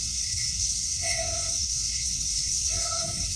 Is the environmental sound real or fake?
fake